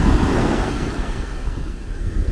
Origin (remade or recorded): remade